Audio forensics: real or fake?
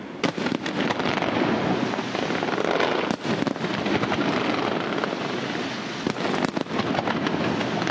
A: real